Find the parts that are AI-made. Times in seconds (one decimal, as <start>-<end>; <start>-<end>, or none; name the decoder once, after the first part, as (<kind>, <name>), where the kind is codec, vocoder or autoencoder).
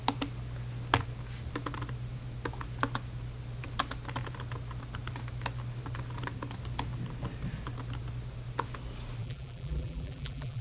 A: 9.2-10.6 (vocoder, BigVGAN v2)